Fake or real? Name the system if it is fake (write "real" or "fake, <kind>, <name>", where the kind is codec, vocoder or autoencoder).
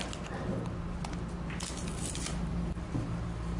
real